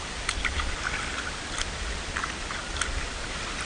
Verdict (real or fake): real